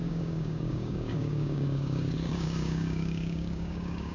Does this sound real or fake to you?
fake